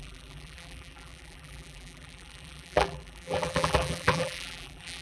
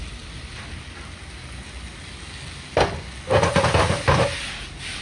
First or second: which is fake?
first